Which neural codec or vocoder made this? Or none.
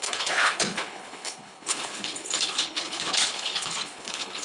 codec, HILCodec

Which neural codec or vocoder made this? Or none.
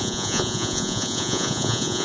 vocoder, Vocos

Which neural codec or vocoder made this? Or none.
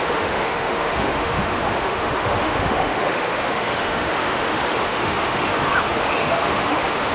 autoencoder, DAC-VAE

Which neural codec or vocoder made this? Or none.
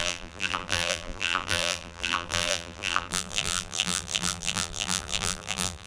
vocoder, BigVGAN v2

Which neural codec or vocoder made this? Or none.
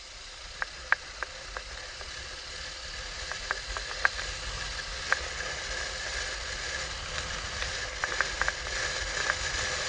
none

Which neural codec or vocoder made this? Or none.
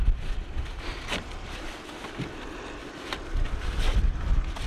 none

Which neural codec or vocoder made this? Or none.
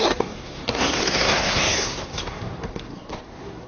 codec, SNAC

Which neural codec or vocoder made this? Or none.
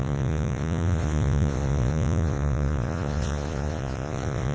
vocoder, Vocos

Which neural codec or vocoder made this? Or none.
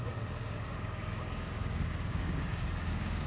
codec, DAC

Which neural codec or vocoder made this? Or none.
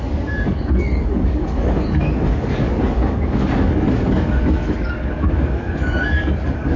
codec, DAC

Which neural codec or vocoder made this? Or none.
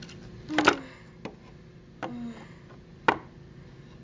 none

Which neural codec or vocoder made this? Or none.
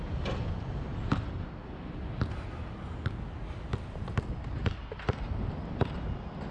none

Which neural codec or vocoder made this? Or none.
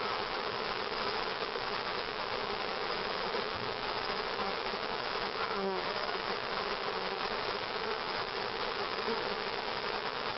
vocoder, WaveNeXt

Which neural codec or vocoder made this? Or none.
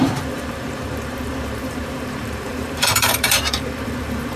vocoder, BigVGAN v2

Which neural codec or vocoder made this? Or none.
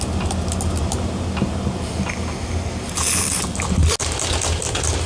none